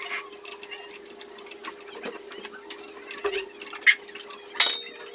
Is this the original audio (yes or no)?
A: yes